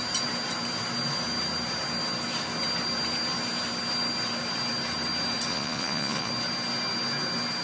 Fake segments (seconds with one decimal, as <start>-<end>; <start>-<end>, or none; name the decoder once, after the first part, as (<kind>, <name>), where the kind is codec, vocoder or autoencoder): 5.5-6.3 (vocoder, Vocos)